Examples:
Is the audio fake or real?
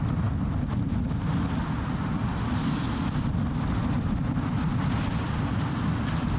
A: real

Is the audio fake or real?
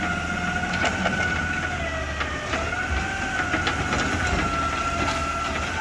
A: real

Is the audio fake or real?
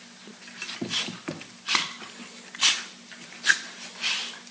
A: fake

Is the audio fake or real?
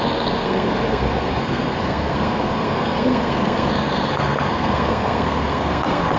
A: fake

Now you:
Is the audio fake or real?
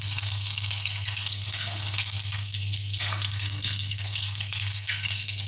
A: fake